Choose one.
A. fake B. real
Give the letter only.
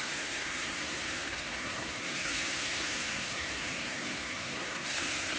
A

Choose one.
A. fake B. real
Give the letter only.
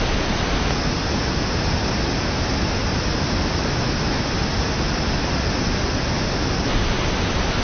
B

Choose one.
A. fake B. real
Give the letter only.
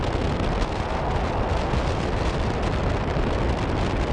B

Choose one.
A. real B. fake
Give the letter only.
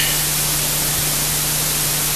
A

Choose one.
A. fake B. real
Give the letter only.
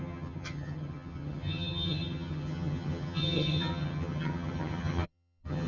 A